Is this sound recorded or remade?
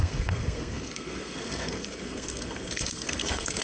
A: remade